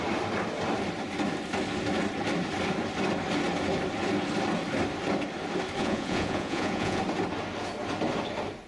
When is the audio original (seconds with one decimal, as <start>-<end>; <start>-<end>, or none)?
0.0-5.8; 7.0-8.7